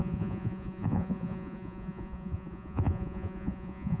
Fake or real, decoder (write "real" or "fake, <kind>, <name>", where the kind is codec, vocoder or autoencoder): fake, vocoder, Vocos